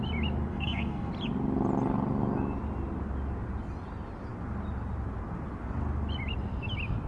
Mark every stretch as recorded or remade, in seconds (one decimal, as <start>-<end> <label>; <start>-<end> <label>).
0.0-0.5 recorded; 0.5-1.1 remade; 1.1-7.1 recorded